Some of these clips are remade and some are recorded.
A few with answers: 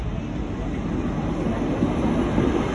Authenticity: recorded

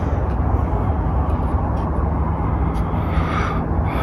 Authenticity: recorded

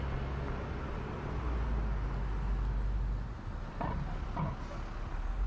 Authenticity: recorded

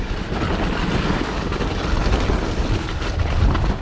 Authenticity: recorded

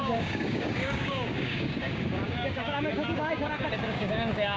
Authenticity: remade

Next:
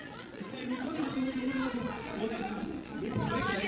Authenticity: remade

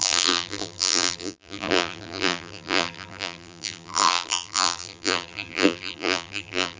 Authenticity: remade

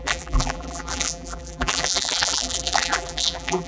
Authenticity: remade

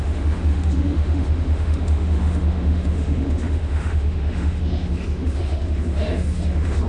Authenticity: remade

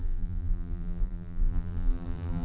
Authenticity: remade